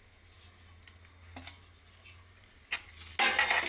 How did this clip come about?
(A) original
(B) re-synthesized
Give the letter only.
A